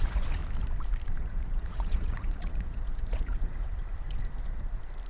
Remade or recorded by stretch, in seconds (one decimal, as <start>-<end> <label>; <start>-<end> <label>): 0.0-0.4 remade; 0.4-1.2 recorded; 1.2-3.8 remade; 3.8-5.1 recorded